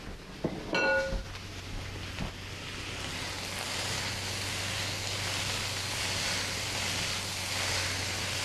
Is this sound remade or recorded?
recorded